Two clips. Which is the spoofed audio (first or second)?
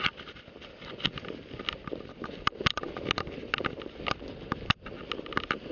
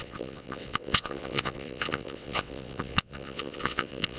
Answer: second